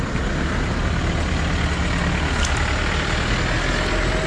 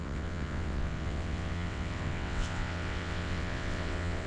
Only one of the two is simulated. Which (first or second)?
second